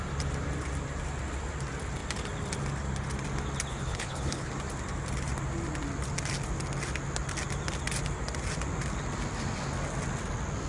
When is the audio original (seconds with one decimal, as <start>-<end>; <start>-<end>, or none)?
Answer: 0.0-3.7; 4.5-10.7

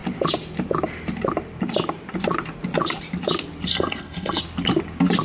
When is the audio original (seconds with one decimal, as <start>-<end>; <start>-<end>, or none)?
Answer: 0.0-3.7; 4.4-5.2

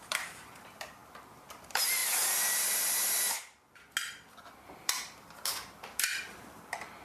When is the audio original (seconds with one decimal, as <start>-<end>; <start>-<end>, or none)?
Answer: 1.0-1.6; 2.0-4.8